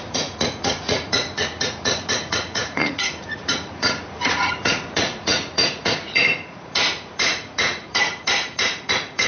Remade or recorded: remade